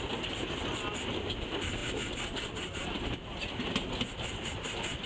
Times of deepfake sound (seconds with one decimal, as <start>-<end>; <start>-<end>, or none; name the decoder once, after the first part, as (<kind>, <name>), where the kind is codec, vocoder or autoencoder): none